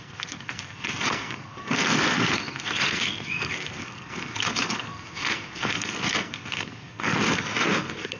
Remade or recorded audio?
remade